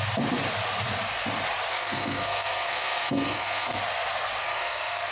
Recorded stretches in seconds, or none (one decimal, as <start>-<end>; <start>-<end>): 0.0-1.7; 3.8-4.4